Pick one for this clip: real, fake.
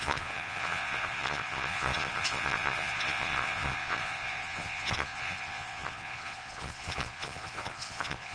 fake